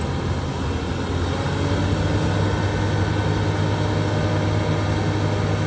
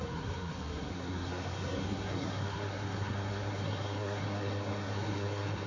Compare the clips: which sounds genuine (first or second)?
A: first